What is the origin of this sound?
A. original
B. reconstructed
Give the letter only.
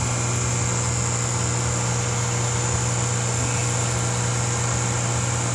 A